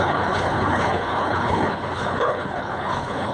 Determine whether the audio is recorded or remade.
remade